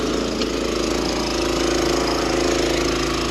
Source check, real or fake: real